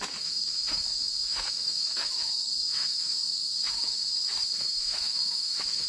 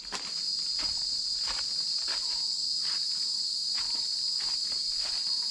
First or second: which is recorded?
second